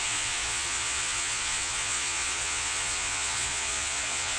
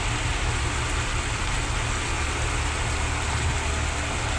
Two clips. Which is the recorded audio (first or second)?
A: second